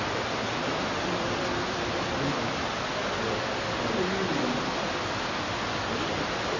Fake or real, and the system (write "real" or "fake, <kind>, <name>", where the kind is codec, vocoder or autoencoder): real